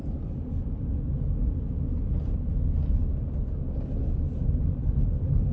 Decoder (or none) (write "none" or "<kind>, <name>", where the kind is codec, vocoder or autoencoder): none